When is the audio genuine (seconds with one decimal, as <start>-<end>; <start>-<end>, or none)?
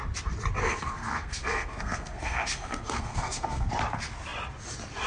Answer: 0.0-0.6; 3.7-5.1